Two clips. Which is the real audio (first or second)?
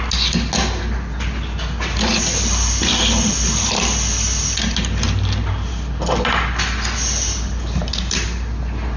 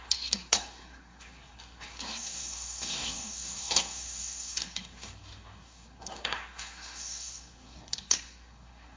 first